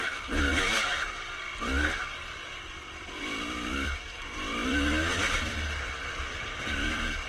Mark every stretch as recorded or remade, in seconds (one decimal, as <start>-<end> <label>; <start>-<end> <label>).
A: 0.0-7.3 remade